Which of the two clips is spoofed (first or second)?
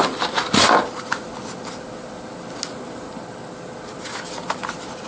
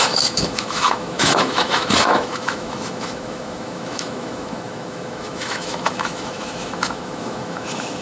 second